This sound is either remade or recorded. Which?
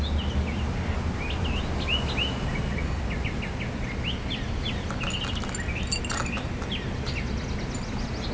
recorded